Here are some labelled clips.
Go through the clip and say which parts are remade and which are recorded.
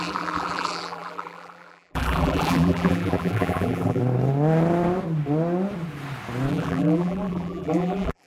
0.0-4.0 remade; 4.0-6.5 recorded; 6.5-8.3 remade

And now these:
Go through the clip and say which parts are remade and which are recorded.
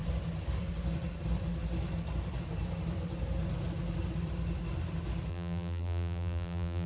0.0-5.3 recorded; 5.3-6.9 remade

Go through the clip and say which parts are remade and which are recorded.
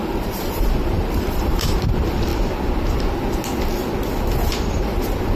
0.0-2.3 remade; 2.3-5.4 recorded